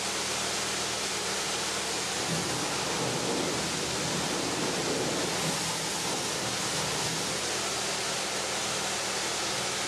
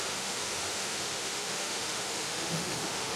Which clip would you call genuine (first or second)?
first